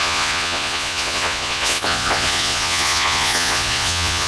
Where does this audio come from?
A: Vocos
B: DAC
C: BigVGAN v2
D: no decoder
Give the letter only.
A